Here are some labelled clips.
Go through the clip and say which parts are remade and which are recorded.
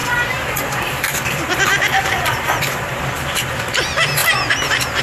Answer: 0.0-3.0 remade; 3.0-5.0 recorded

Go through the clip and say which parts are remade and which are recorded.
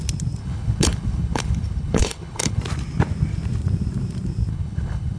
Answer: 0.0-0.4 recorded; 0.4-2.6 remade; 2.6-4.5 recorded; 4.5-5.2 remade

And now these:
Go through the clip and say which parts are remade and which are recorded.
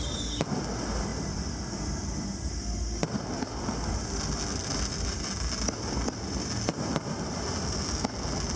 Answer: 0.0-1.1 recorded; 1.1-2.5 remade; 2.5-4.6 recorded; 4.6-6.5 remade; 6.5-8.6 recorded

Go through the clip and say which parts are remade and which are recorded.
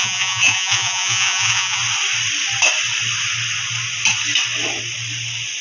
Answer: 0.0-1.8 remade; 1.8-5.6 recorded